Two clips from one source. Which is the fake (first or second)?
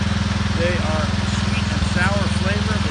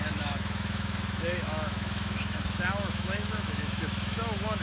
second